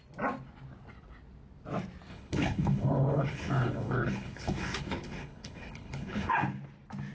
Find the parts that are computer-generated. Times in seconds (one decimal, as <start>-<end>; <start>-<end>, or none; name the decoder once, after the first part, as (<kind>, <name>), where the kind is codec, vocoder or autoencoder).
2.1-6.3 (codec, HILCodec)